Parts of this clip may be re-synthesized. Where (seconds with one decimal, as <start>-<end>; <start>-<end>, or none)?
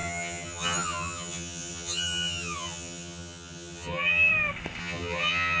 0.0-4.3; 4.8-5.6